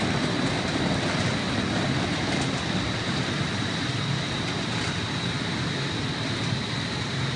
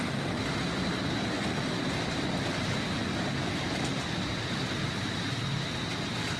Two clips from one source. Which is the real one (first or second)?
second